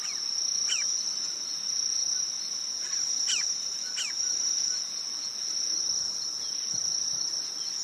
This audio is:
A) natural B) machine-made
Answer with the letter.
A